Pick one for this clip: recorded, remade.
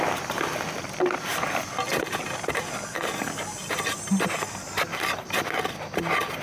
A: recorded